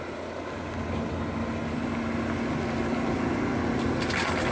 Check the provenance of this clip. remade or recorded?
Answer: recorded